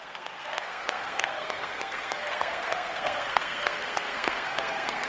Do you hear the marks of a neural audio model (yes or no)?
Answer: yes